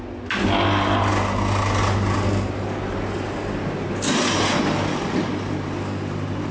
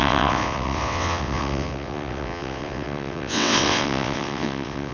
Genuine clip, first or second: first